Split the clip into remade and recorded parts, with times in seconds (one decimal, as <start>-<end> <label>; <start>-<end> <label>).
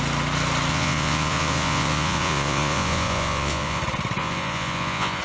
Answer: 0.0-0.7 recorded; 0.7-3.8 remade; 3.8-4.2 recorded; 4.2-5.2 remade